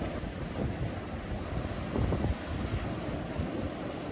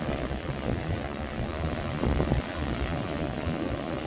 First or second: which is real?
first